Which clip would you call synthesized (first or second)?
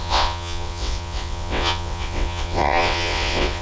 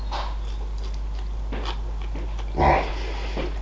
first